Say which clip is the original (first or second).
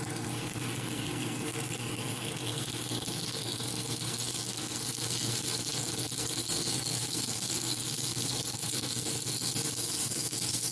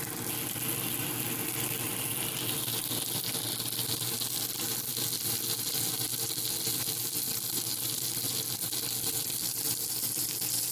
second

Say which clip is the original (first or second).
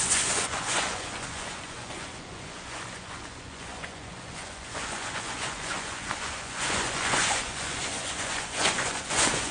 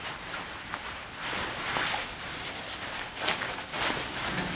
second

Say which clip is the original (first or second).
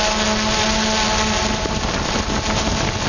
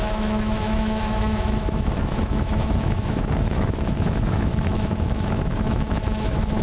first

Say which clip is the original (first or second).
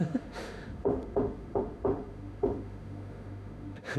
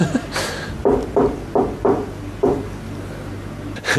second